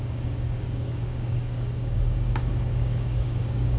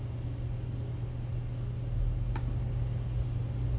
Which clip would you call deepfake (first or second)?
first